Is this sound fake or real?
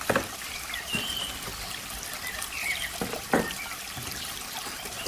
fake